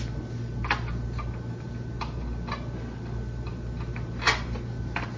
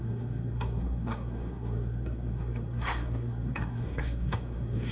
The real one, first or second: first